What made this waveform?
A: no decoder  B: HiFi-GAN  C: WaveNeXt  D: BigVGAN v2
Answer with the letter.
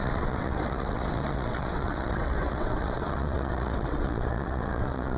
C